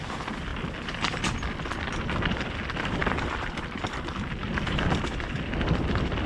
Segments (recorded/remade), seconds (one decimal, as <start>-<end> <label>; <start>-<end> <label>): 0.0-6.3 remade